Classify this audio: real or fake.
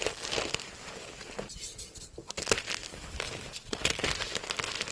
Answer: real